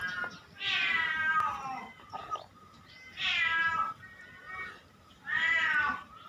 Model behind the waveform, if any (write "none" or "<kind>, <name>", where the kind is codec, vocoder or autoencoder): none